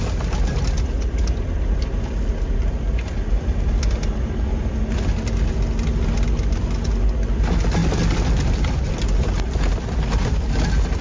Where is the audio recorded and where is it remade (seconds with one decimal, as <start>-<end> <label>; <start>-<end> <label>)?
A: 0.0-11.0 recorded